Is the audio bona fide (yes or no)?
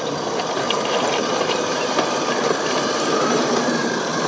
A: no